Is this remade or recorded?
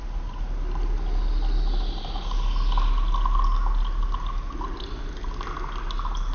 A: recorded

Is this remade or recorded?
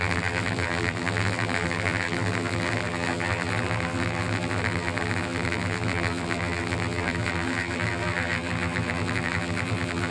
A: remade